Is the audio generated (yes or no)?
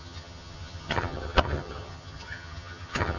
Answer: yes